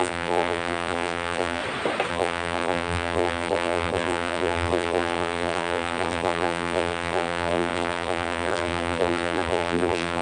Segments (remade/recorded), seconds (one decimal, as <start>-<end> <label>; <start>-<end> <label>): 0.0-1.6 remade; 1.6-2.1 recorded; 2.1-10.2 remade